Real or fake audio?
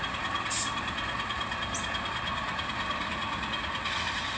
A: real